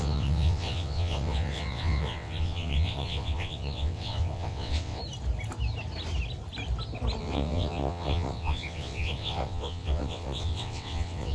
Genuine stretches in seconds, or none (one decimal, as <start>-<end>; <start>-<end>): 5.0-7.2